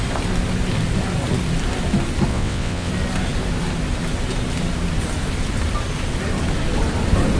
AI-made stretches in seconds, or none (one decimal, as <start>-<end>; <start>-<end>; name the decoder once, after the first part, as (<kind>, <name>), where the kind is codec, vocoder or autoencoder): 2.3-2.9 (vocoder, WaveNeXt)